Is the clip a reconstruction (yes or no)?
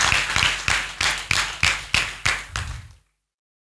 no